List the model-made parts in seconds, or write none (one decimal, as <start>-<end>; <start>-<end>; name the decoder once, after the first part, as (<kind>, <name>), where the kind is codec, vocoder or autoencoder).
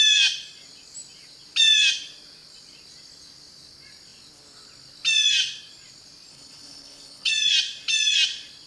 6.3-7.3 (codec, HILCodec)